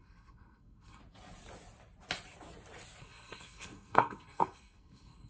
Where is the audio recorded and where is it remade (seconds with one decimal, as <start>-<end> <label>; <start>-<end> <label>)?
0.0-1.0 remade; 1.0-3.0 recorded; 3.0-5.3 remade